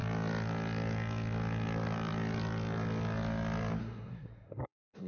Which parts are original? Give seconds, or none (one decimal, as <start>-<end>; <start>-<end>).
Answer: 0.0-3.8